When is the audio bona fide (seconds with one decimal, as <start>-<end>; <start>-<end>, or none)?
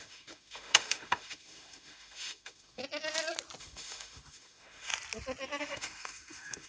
2.8-3.6; 4.9-5.6